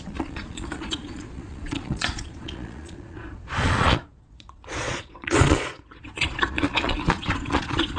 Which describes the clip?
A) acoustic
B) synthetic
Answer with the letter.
B